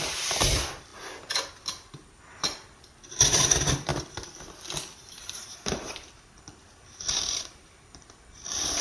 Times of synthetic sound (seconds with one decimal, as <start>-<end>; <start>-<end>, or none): 0.0-0.9; 1.4-8.8

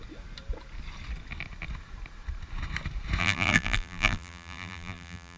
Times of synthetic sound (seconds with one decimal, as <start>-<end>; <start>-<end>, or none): 3.2-5.4

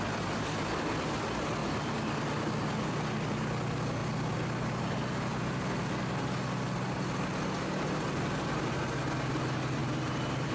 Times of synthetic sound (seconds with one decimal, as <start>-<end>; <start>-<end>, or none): 9.8-10.5

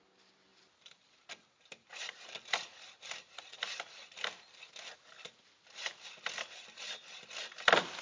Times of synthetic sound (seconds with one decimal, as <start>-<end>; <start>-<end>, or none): none

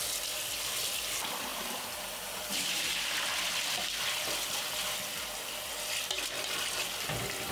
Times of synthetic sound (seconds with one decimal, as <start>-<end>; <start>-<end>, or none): 1.5-2.9